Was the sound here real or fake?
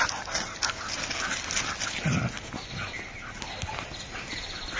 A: real